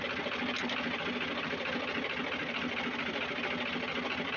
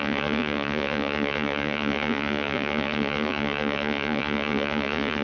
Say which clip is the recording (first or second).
first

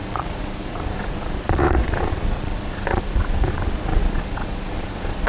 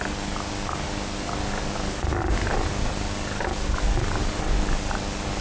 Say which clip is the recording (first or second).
second